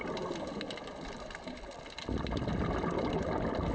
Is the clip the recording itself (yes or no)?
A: yes